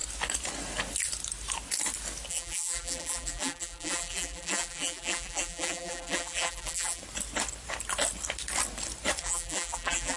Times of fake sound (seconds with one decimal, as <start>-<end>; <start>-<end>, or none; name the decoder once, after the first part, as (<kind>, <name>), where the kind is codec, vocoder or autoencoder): 2.3-7.0 (vocoder, BigVGAN v2); 9.2-10.2